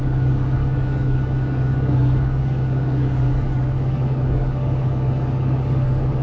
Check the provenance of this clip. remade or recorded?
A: remade